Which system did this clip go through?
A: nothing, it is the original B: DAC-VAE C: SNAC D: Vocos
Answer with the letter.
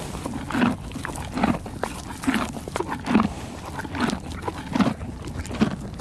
A